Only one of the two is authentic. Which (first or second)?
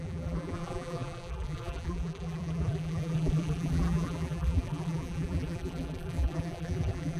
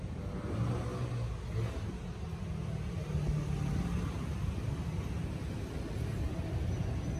second